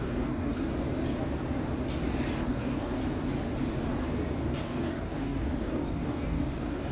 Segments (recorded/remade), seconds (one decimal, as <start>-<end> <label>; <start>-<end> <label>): 0.0-0.7 remade; 0.7-2.4 recorded; 2.4-3.0 remade; 3.0-4.6 recorded; 4.6-6.9 remade